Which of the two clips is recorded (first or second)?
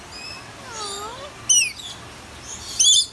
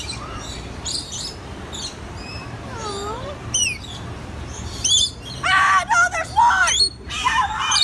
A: first